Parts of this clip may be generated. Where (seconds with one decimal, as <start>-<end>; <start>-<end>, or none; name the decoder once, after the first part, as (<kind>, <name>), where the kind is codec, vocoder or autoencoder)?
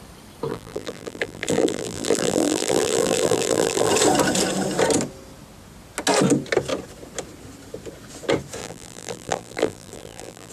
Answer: 0.5-3.9 (vocoder, BigVGAN v2); 8.6-10.5